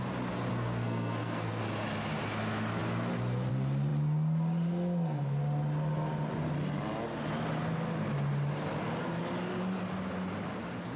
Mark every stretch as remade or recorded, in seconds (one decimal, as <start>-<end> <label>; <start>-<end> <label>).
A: 0.0-0.5 recorded; 0.5-1.6 remade; 1.6-11.0 recorded